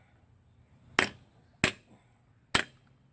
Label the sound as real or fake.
real